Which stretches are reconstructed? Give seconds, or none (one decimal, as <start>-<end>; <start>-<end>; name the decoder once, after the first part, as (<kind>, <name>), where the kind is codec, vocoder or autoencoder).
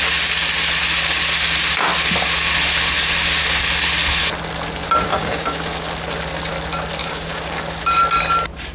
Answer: 5.1-5.9 (codec, DAC); 7.0-7.6